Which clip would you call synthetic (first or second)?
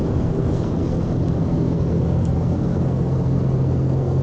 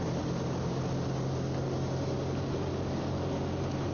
first